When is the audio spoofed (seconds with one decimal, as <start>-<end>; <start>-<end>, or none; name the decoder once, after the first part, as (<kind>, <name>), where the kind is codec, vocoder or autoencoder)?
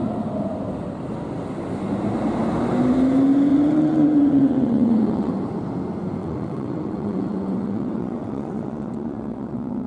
3.5-5.3 (vocoder, WaveNeXt); 6.2-9.9